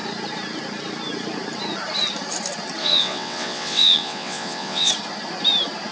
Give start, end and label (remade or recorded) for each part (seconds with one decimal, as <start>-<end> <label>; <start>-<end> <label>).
0.0-2.8 recorded; 2.8-4.9 remade; 4.9-5.9 recorded

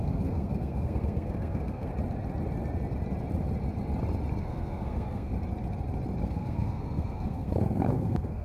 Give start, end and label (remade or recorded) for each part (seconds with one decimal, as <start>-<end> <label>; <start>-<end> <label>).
0.0-1.9 remade; 1.9-4.4 recorded; 4.4-5.3 remade; 5.3-6.2 recorded; 6.2-8.4 remade

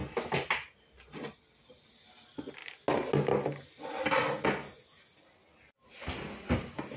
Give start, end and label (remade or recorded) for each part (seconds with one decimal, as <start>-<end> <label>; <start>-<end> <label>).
0.0-7.0 recorded

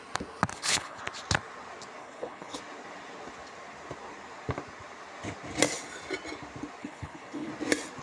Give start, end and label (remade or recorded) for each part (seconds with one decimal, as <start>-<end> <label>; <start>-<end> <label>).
0.0-0.5 recorded; 0.5-1.0 remade; 1.0-2.0 recorded; 2.0-2.6 remade; 2.6-6.8 recorded; 6.8-7.5 remade; 7.5-8.0 recorded

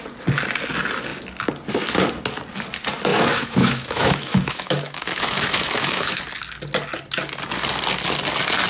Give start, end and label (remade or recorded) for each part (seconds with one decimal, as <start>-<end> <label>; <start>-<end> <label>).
0.0-3.1 recorded; 3.1-6.2 remade; 6.2-8.7 recorded

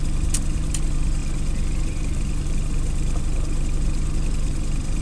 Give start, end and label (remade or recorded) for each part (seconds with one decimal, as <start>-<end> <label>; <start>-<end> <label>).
0.0-5.0 recorded

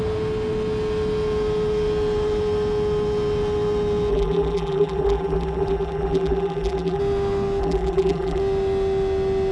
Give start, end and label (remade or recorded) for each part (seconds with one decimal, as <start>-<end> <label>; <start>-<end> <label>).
0.0-4.1 recorded; 4.1-7.0 remade; 7.0-7.6 recorded; 7.6-8.4 remade; 8.4-9.5 recorded

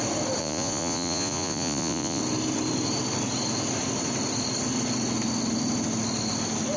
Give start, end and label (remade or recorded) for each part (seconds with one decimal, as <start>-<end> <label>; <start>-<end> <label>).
0.0-0.4 recorded; 0.4-2.2 remade; 2.2-6.8 recorded